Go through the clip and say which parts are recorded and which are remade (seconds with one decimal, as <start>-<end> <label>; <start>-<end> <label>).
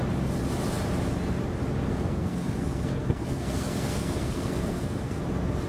0.0-1.9 recorded; 1.9-5.2 remade; 5.2-5.7 recorded